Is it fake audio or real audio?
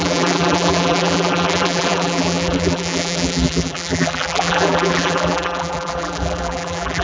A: fake